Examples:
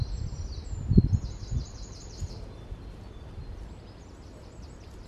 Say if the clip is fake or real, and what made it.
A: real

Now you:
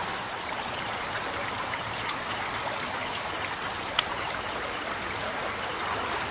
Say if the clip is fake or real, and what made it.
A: real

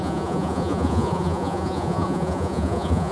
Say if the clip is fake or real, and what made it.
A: fake, vocoder, Vocos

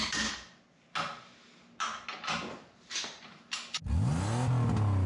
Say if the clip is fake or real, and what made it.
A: real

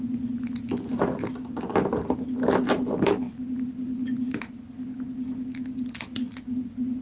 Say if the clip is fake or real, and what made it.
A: real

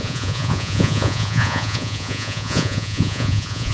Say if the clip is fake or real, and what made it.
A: fake, vocoder, Vocos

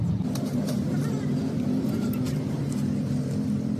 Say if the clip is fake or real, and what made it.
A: real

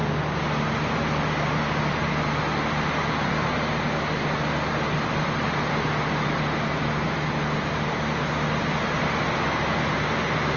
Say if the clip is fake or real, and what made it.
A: real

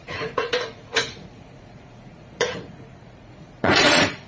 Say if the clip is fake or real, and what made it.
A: fake, vocoder, Vocos